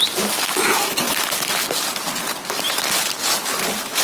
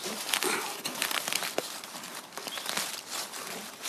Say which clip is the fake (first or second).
second